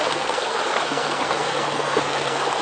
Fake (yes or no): yes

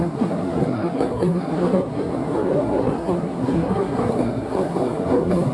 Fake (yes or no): yes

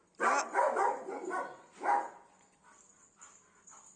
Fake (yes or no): no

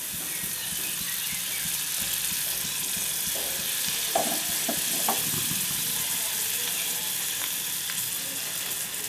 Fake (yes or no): no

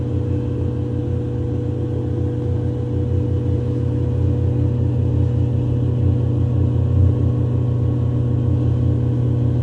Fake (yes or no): no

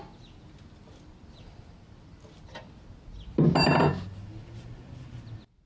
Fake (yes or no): no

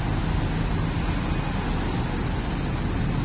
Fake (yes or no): no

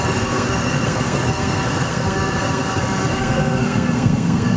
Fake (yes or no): yes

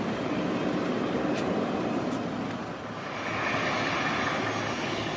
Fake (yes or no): no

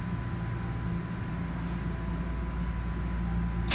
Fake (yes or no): no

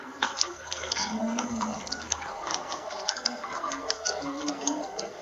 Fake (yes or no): yes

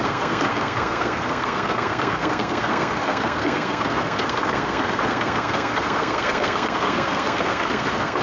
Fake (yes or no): yes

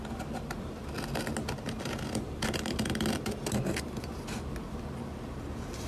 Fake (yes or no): no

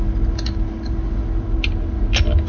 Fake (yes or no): no